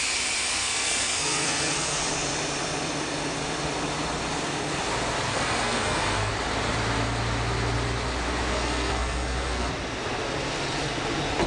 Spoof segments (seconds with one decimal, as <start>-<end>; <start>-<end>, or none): 0.5-2.1; 5.3-6.3; 8.5-9.7